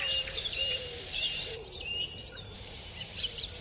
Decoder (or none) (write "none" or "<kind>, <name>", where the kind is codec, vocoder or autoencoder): vocoder, BigVGAN v2